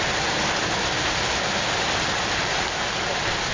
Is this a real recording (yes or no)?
yes